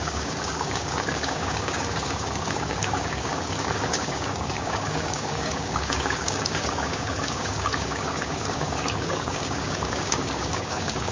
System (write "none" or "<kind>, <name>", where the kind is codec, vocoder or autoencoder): codec, DAC